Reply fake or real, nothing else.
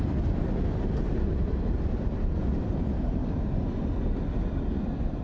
real